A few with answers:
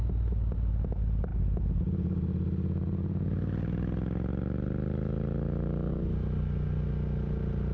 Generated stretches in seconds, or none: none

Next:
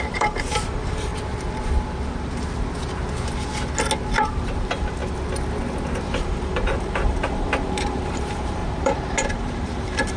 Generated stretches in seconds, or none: 0.0-1.1 (vocoder, BigVGAN v2); 4.3-5.0; 6.0-10.2